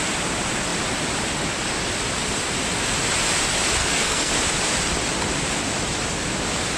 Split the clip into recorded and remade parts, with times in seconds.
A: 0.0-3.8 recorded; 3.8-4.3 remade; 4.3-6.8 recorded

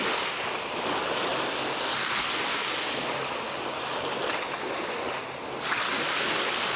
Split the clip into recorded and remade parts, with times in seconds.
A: 0.0-6.8 recorded

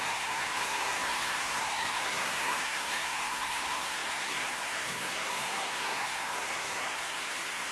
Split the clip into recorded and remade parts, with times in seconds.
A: 0.0-7.7 remade

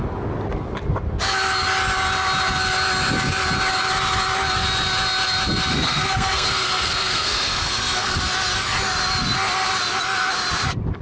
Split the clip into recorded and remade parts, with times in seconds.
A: 0.0-5.7 recorded; 5.7-8.2 remade; 8.2-11.0 recorded

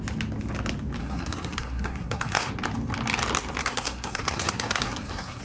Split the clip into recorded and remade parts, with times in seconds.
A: 0.0-1.0 recorded; 1.0-2.5 remade; 2.5-3.6 recorded; 3.6-5.4 remade